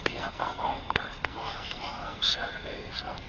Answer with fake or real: fake